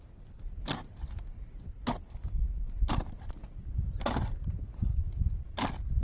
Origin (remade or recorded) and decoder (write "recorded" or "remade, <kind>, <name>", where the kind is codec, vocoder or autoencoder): recorded